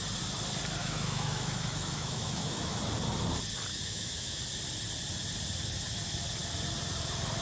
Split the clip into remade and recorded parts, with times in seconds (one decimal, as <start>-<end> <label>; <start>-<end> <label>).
0.0-0.8 recorded; 0.8-2.8 remade; 2.8-3.7 recorded; 3.7-4.4 remade; 4.4-7.4 recorded